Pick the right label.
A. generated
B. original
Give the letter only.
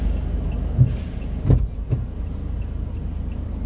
B